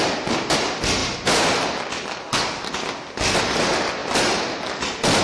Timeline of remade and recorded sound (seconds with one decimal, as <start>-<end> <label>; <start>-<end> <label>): 0.0-5.2 recorded